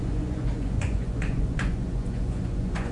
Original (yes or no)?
no